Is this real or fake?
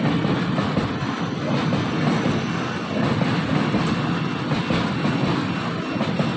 real